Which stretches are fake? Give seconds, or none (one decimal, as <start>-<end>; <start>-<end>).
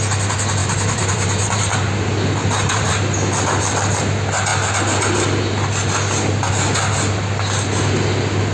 0.6-1.8; 2.4-2.9